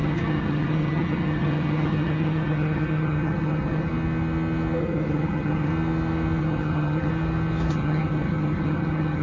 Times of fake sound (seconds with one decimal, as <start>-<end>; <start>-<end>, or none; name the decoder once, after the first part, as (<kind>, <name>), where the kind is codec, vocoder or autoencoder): 0.0-3.9 (vocoder, HiFi-GAN); 4.8-5.7; 6.4-7.1; 7.7-9.2